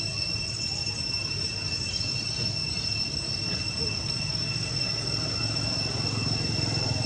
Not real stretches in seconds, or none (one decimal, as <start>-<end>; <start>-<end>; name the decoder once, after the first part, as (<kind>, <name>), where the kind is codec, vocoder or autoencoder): 0.8-1.5 (vocoder, BigVGAN v2)